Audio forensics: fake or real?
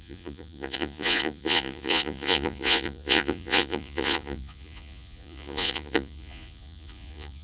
fake